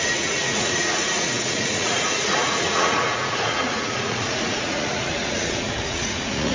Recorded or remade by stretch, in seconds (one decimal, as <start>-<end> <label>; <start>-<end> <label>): 0.0-6.5 remade